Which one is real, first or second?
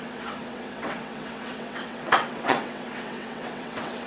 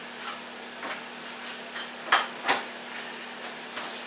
second